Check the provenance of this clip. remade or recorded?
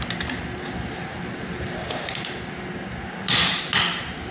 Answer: recorded